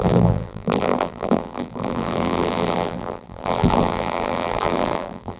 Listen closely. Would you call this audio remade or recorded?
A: remade